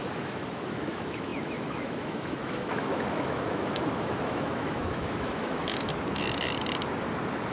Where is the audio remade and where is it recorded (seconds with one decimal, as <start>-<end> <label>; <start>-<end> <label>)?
0.0-5.9 remade; 5.9-7.5 recorded